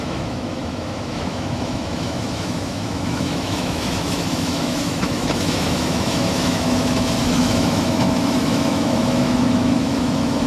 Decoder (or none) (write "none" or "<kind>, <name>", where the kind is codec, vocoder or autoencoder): autoencoder, DAC-VAE